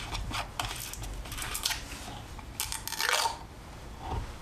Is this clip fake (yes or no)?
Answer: no